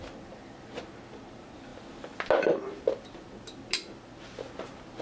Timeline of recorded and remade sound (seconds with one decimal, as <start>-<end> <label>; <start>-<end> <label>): 0.0-5.0 recorded

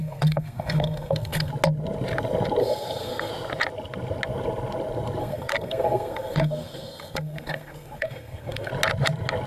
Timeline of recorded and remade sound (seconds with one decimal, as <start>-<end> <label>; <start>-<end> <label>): 0.0-1.5 remade; 1.5-2.6 recorded; 2.6-3.3 remade; 3.3-5.2 recorded; 5.2-8.7 remade; 8.7-9.5 recorded

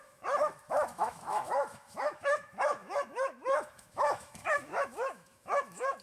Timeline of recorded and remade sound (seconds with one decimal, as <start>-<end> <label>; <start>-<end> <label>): 0.0-6.0 remade

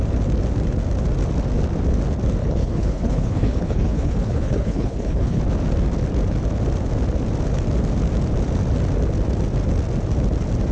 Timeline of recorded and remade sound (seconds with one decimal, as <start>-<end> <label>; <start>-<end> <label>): 0.0-2.4 recorded; 2.4-5.4 remade; 5.4-10.7 recorded